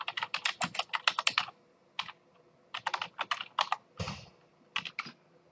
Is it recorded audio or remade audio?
recorded